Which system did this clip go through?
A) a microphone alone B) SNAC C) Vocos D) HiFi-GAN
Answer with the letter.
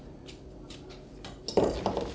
A